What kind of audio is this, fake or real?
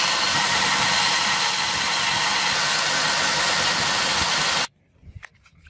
fake